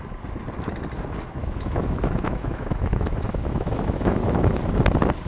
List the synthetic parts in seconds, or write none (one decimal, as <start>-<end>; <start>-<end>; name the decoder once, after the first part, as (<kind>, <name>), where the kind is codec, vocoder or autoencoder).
1.4-4.6 (autoencoder, DAC-VAE)